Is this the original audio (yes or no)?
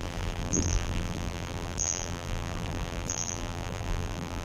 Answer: no